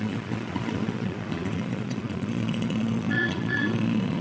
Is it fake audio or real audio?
fake